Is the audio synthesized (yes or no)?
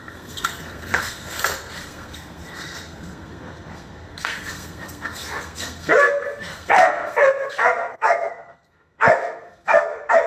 yes